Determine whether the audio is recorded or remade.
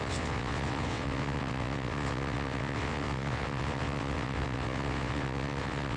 remade